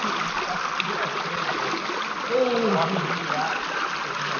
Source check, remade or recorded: recorded